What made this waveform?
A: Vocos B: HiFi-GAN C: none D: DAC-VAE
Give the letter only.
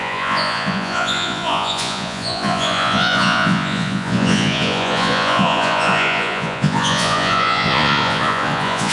A